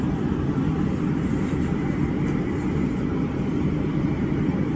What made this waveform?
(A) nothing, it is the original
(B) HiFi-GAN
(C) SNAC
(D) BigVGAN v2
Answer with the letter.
A